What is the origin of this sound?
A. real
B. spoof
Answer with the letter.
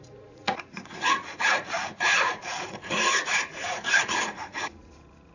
B